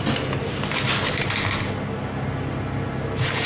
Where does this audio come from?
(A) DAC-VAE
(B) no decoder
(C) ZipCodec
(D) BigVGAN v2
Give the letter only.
B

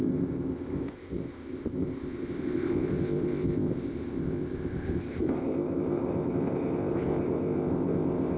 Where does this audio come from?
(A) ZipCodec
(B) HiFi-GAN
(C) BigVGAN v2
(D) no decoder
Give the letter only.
A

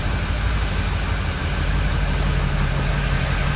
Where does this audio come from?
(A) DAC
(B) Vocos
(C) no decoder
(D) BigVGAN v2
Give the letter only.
D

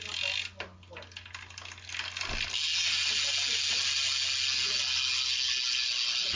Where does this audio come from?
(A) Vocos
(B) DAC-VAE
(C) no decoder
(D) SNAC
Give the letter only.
C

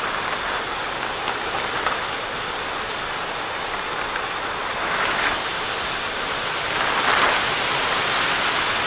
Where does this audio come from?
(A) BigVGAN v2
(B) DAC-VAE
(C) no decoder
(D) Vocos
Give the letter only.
C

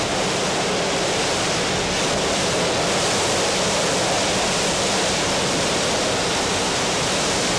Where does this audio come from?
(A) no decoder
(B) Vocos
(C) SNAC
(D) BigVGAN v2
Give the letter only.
A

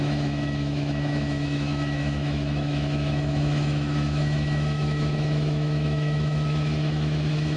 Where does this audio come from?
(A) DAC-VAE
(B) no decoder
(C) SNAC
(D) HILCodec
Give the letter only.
A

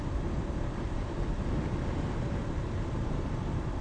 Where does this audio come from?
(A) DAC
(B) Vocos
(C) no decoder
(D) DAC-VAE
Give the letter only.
C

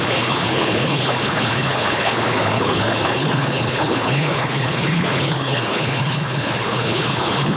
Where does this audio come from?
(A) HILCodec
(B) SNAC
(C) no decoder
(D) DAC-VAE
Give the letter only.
A